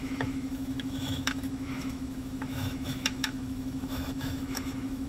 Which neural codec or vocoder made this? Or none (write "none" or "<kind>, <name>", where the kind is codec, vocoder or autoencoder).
autoencoder, DAC-VAE